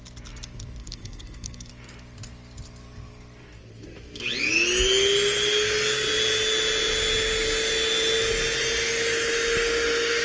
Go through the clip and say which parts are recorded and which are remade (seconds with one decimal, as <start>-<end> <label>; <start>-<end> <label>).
0.0-0.8 recorded; 0.8-1.7 remade; 1.7-10.2 recorded